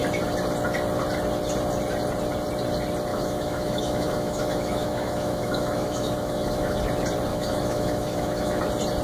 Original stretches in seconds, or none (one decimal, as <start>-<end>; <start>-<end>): 0.0-3.1; 6.8-7.3; 8.6-9.0